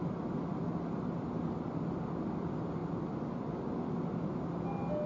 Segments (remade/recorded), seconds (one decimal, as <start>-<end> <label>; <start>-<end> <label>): 0.0-5.1 recorded